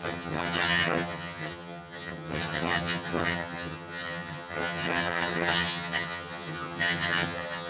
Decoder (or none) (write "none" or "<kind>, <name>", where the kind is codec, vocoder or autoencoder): vocoder, HiFi-GAN